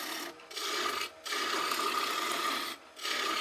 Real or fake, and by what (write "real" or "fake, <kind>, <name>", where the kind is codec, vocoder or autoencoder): real